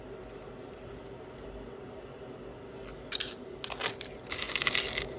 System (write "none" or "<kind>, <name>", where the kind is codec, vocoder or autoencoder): none